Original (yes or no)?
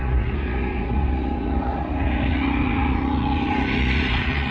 no